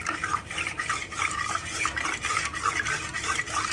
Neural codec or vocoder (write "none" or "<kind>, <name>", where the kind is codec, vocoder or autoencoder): none